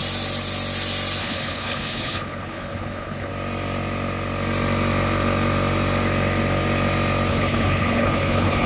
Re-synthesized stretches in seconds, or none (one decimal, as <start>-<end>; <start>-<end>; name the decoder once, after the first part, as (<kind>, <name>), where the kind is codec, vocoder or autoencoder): 1.2-3.3 (codec, HILCodec); 7.3-8.7